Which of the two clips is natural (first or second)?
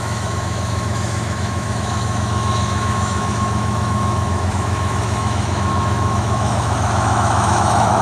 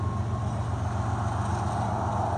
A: second